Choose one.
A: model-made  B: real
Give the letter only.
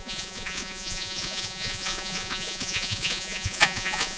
A